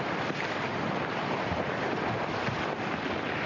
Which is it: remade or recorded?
recorded